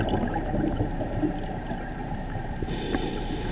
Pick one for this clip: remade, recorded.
remade